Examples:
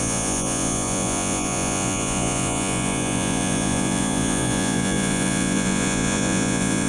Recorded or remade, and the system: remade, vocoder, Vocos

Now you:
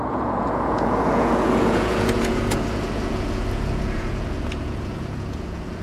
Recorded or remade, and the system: remade, vocoder, Vocos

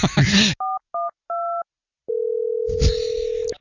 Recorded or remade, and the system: recorded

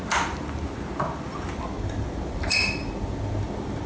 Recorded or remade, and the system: recorded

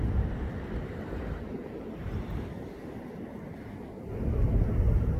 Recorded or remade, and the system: recorded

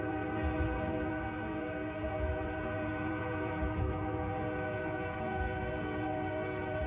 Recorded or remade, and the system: remade, vocoder, Vocos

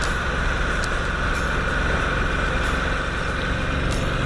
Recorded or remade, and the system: recorded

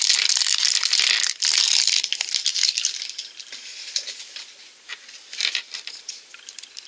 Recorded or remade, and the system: recorded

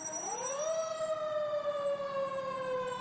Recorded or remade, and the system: recorded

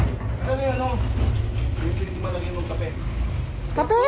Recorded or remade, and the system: recorded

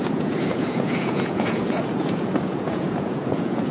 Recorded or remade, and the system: remade, vocoder, Vocos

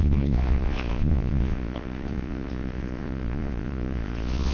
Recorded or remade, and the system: remade, vocoder, Vocos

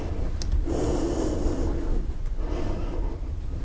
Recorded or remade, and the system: recorded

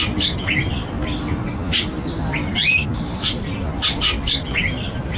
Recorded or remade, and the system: recorded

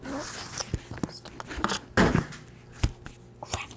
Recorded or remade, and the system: recorded